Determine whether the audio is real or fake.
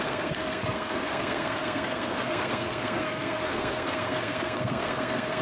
fake